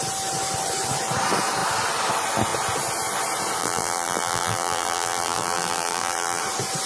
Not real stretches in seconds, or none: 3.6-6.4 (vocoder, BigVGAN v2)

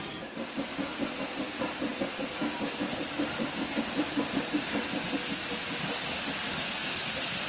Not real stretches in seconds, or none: none